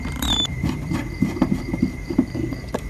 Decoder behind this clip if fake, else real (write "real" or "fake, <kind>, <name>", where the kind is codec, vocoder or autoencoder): fake, vocoder, BigVGAN v2